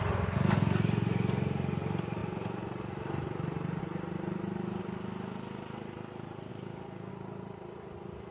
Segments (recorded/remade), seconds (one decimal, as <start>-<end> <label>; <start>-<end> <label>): 0.0-6.5 recorded; 6.5-7.1 remade; 7.1-8.3 recorded